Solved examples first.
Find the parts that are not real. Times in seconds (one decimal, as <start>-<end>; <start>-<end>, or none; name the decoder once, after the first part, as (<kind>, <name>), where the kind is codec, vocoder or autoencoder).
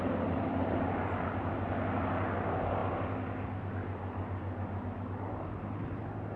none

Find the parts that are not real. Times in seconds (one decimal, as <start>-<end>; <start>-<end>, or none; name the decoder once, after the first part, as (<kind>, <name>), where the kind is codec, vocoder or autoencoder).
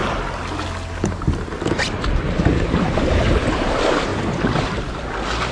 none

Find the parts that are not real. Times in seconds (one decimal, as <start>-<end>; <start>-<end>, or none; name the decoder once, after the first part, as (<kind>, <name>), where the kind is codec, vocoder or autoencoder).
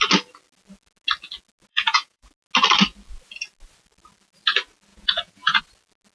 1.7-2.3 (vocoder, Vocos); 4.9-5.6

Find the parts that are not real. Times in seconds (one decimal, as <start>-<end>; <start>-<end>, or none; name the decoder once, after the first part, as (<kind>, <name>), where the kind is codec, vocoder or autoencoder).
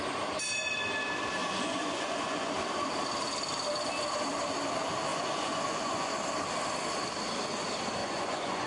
1.4-2.5 (vocoder, Vocos); 5.1-6.1; 8.0-8.7